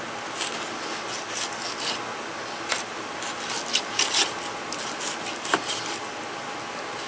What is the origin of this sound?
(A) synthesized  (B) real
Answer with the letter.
B